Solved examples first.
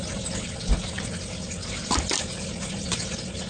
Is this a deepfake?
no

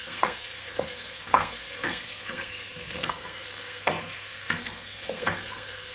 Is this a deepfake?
yes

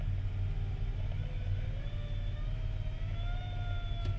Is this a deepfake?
no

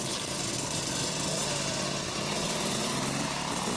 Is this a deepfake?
no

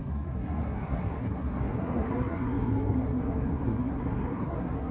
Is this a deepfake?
yes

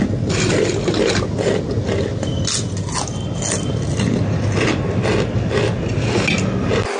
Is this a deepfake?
no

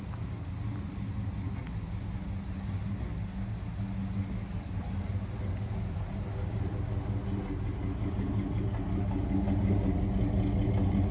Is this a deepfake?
no